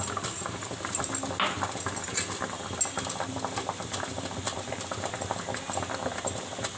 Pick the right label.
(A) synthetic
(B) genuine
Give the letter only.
B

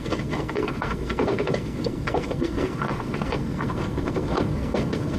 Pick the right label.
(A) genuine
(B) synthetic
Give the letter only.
B